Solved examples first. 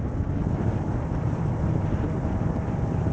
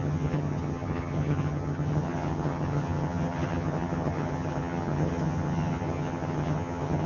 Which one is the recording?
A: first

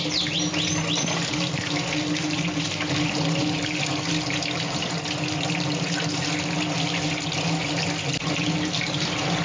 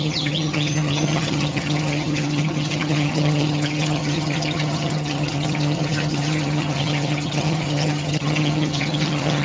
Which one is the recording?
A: first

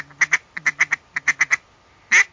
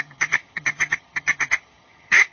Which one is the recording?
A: first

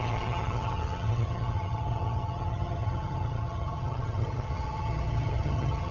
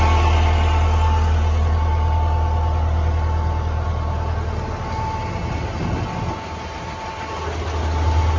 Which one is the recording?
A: second